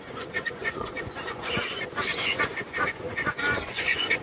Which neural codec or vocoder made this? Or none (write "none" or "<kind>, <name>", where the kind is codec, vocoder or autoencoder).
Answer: vocoder, Vocos